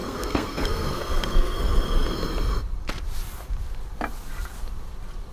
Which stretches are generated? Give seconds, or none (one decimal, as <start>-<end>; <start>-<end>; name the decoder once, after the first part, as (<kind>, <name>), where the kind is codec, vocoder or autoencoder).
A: 0.0-1.6 (codec, SNAC)